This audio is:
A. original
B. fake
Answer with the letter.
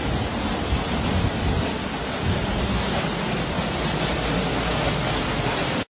A